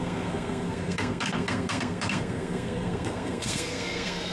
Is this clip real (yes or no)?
no